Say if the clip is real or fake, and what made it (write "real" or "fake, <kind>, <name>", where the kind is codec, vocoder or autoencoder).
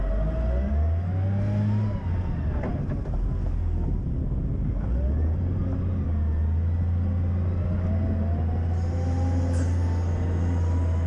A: real